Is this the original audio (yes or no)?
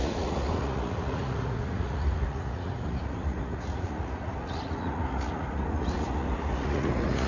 no